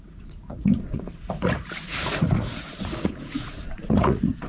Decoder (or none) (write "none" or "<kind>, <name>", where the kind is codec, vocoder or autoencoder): vocoder, Vocos